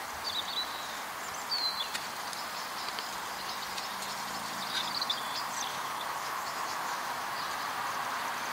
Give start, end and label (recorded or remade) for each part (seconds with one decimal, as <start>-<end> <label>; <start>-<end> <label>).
0.0-5.7 recorded; 5.7-7.3 remade; 7.3-8.5 recorded